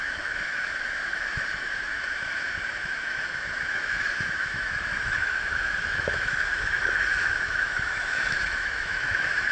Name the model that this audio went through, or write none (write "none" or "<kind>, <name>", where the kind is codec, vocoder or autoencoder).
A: autoencoder, DAC-VAE